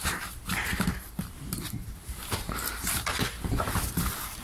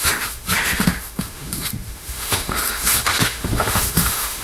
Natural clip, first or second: first